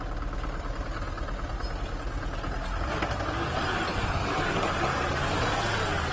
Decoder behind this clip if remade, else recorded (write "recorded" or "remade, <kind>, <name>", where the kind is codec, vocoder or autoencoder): recorded